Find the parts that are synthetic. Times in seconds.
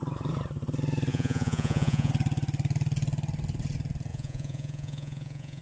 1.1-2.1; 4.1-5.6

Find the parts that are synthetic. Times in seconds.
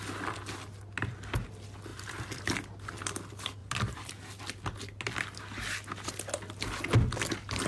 1.9-2.4; 3.6-4.1